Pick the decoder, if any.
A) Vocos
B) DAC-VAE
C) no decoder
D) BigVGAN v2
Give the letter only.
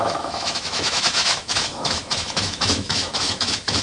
B